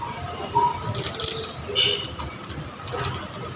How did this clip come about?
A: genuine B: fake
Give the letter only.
A